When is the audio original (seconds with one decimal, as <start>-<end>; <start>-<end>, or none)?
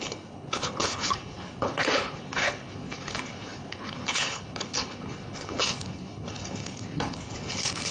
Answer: none